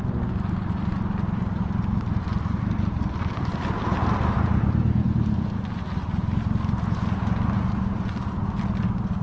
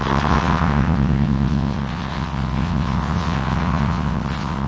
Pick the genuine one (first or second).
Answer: first